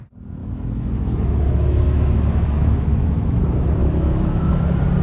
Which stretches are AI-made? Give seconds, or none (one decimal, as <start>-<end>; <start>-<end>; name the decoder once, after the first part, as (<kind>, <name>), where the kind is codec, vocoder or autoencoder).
0.4-3.4 (autoencoder, DAC-VAE); 3.8-4.5